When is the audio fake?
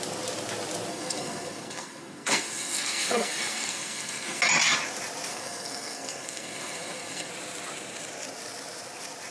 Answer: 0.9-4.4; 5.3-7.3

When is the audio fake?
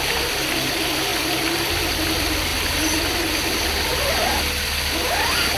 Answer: none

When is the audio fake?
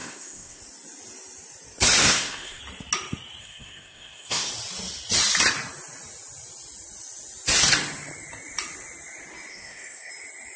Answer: 0.0-0.6; 2.0-2.6; 3.4-4.5; 9.5-10.1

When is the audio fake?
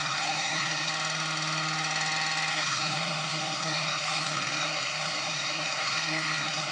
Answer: 0.0-0.9; 2.5-6.7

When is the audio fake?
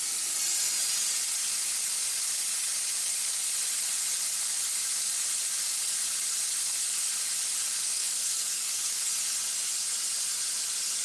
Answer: 7.8-9.1